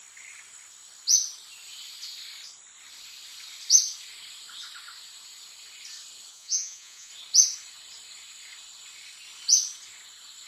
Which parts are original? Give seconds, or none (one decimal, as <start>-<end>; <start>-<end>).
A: 0.0-6.3; 7.1-10.5